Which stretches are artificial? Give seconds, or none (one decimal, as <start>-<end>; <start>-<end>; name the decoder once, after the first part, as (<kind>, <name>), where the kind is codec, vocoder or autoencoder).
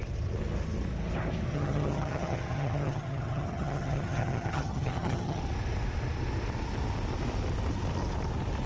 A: 1.5-5.4 (vocoder, HiFi-GAN)